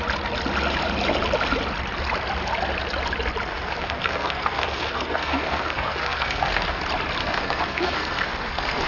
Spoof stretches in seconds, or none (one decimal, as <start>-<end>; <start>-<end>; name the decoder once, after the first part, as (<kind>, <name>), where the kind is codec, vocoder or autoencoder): 3.5-6.8 (codec, SNAC); 7.2-8.9

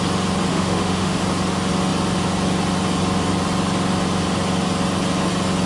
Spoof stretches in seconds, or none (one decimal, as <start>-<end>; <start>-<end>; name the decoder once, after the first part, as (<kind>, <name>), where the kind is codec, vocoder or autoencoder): 0.5-1.2 (autoencoder, DAC-VAE)